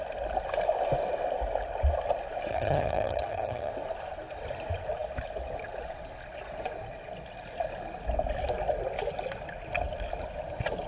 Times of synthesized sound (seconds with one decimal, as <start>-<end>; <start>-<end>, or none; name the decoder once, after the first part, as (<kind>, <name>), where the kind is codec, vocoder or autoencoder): 2.5-3.7 (vocoder, HiFi-GAN)